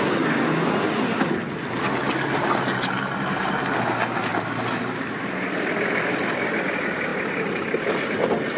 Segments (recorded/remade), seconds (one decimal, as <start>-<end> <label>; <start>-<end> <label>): 0.0-8.6 recorded